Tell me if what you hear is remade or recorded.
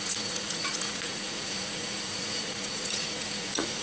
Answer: remade